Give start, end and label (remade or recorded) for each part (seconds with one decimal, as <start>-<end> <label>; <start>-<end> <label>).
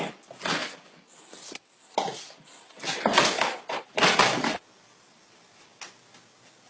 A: 0.0-6.7 recorded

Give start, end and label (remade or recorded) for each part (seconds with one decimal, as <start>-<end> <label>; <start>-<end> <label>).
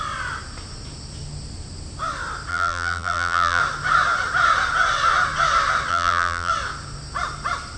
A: 0.0-2.5 recorded; 2.5-3.6 remade; 3.6-5.9 recorded; 5.9-6.5 remade; 6.5-7.8 recorded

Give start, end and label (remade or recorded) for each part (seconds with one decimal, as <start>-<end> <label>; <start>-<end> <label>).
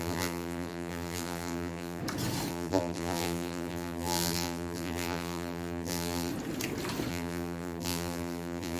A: 0.0-2.0 remade; 2.0-2.5 recorded; 2.5-6.3 remade; 6.3-7.1 recorded; 7.1-8.8 remade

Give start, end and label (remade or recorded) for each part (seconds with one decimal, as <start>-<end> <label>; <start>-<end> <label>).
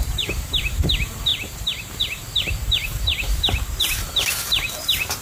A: 0.0-5.2 remade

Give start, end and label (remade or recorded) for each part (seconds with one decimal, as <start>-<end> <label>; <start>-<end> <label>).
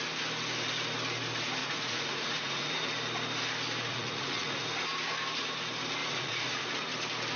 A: 0.0-1.6 recorded; 1.6-2.7 remade; 2.7-3.9 recorded; 3.9-4.6 remade; 4.6-6.0 recorded; 6.0-6.9 remade; 6.9-7.4 recorded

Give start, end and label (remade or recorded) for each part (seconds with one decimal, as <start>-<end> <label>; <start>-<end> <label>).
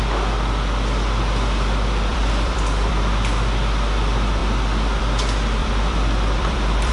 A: 0.0-2.1 recorded; 2.1-2.9 remade; 2.9-5.6 recorded; 5.6-6.9 remade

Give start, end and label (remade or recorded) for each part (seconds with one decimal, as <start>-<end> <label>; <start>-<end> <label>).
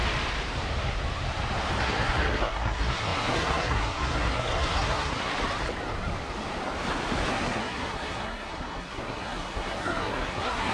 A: 0.0-1.8 recorded; 1.8-5.3 remade; 5.3-7.3 recorded; 7.3-10.7 remade